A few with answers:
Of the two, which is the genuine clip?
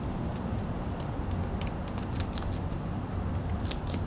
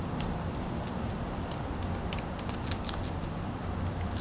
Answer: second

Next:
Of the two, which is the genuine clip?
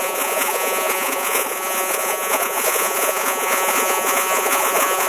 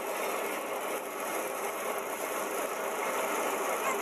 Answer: second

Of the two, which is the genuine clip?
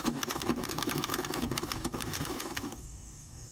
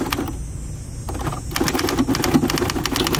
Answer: second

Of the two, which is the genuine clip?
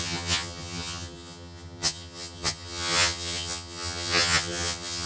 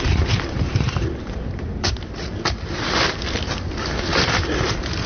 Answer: second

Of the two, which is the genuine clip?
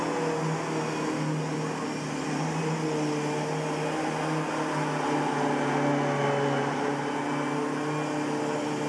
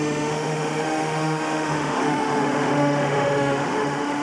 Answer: first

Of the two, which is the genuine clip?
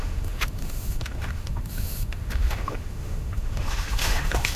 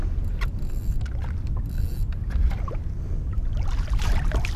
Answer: second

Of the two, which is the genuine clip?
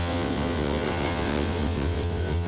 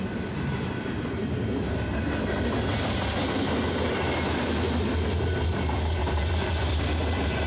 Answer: second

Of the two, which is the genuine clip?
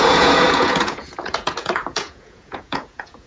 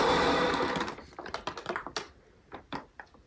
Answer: second